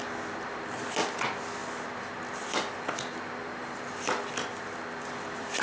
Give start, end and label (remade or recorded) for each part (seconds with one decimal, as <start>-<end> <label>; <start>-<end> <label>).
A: 0.0-5.6 recorded